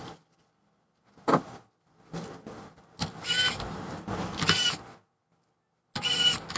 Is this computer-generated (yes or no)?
no